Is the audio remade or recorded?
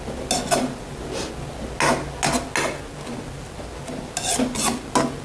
recorded